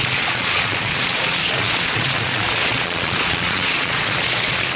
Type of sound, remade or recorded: remade